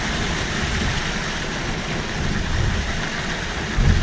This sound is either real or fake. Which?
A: real